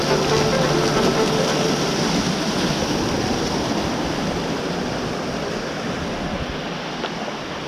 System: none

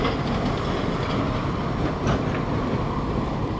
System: none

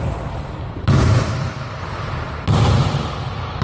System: none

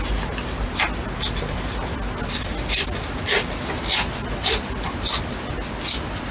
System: none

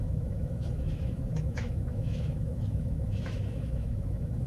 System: autoencoder, DAC-VAE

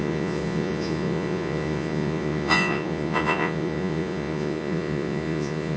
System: vocoder, Vocos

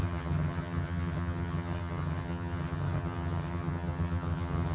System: vocoder, HiFi-GAN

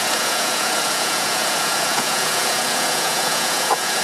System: vocoder, Vocos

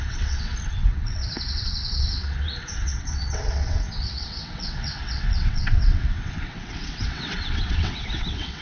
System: vocoder, WaveNeXt